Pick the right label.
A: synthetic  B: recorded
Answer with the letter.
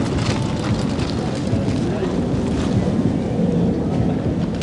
B